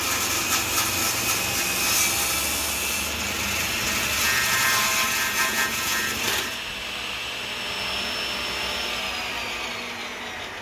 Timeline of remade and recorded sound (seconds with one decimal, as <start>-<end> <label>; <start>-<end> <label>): 0.0-10.6 recorded